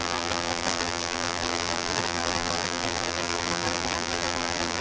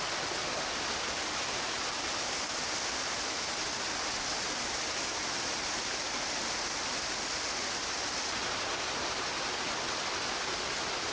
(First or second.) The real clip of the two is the second